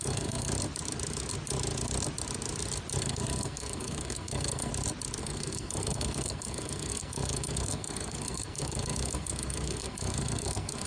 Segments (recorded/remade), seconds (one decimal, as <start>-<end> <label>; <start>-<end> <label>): 0.0-0.5 remade; 0.5-3.0 recorded; 3.0-4.7 remade; 4.7-5.2 recorded; 5.2-10.9 remade

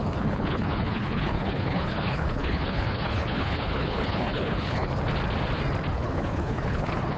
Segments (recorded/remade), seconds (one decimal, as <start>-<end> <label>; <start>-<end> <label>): 0.0-4.9 remade; 4.9-5.9 recorded; 5.9-7.2 remade

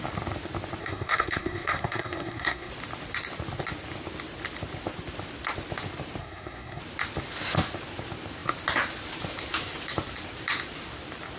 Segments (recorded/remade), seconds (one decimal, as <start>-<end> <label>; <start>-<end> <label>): 0.0-0.8 recorded; 0.8-2.7 remade; 2.7-6.2 recorded; 6.2-6.8 remade; 6.8-11.4 recorded

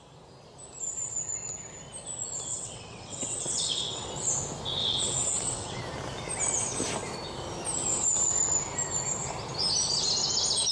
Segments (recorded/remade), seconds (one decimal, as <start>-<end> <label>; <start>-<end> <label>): 0.0-2.5 recorded; 2.5-4.1 remade; 4.1-4.8 recorded; 4.8-5.8 remade; 5.8-10.7 recorded

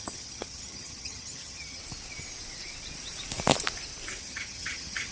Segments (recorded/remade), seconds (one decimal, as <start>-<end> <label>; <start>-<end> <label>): 0.0-1.8 remade; 1.8-4.2 recorded; 4.2-5.1 remade